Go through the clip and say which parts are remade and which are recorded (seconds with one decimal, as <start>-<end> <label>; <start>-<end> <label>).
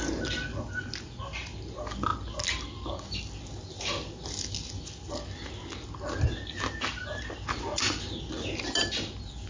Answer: 0.0-9.5 recorded